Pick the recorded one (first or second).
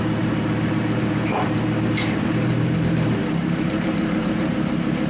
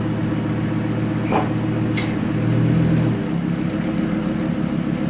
second